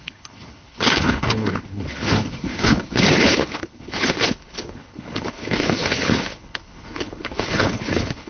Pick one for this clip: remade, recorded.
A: remade